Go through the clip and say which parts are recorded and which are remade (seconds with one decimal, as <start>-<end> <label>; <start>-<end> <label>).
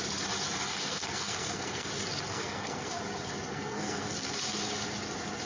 0.0-0.6 recorded; 0.6-1.9 remade; 1.9-2.3 recorded; 2.3-3.0 remade; 3.0-3.5 recorded; 3.5-4.1 remade; 4.1-5.5 recorded